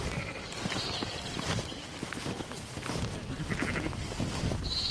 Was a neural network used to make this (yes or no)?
yes